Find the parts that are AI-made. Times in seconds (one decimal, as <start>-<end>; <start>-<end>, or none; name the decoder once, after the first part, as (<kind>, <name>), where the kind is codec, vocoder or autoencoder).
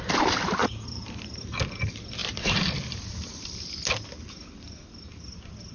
0.6-1.4 (vocoder, BigVGAN v2)